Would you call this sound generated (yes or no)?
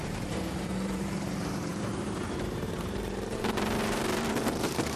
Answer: yes